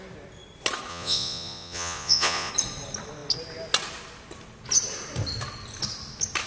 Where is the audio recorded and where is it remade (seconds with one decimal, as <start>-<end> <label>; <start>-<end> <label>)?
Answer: 0.0-0.9 recorded; 0.9-2.5 remade; 2.5-6.5 recorded